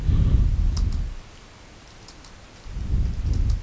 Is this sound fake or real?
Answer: real